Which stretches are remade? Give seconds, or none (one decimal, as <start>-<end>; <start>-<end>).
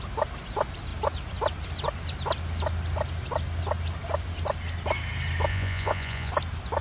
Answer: 5.5-6.3